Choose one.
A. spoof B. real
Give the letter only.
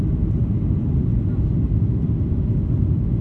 B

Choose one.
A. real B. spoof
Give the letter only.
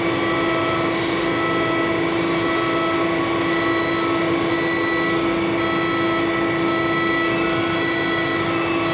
A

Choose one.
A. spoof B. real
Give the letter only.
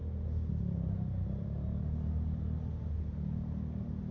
B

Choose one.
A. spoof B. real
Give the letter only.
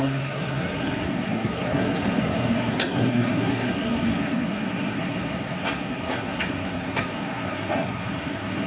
A